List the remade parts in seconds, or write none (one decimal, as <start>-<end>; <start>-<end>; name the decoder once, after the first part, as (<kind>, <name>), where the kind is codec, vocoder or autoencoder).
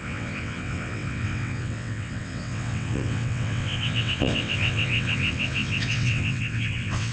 0.0-7.1 (vocoder, WaveNeXt)